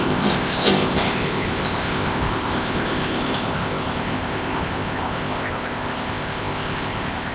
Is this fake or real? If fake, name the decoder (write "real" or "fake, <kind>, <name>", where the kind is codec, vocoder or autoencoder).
fake, codec, ZipCodec